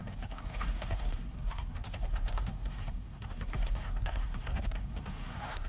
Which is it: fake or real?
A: fake